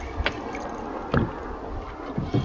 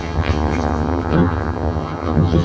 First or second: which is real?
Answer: first